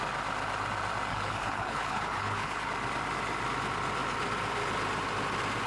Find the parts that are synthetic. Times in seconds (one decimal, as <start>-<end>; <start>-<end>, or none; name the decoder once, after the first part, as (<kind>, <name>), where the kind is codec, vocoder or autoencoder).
1.1-2.7 (codec, HILCodec)